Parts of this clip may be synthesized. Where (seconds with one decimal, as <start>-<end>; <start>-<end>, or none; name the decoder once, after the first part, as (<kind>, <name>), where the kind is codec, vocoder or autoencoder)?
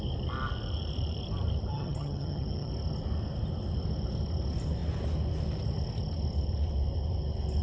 1.7-2.7 (vocoder, HiFi-GAN)